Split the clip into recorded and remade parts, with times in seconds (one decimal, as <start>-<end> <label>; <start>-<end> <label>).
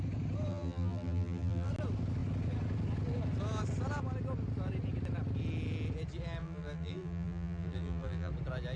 0.0-0.5 recorded; 0.5-1.7 remade; 1.7-6.4 recorded; 6.4-8.3 remade; 8.3-8.8 recorded